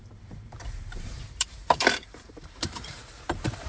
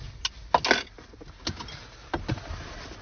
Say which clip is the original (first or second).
second